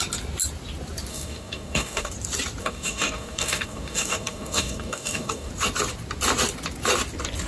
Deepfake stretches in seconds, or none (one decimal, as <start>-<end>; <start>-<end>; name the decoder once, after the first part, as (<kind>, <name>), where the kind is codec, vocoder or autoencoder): 1.1-2.1 (codec, DAC); 2.6-5.5